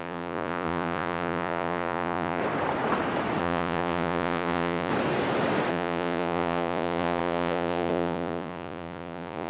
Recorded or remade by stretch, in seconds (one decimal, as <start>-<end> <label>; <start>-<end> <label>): 0.0-2.4 remade; 2.4-3.4 recorded; 3.4-4.9 remade; 4.9-5.7 recorded; 5.7-9.5 remade